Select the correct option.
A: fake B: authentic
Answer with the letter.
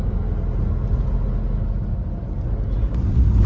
B